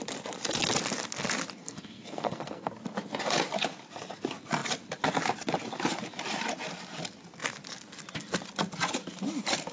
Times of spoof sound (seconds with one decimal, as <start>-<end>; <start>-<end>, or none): 1.6-2.7